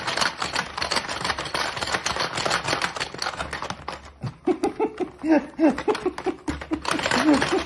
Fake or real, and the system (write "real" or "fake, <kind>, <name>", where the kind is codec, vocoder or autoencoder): real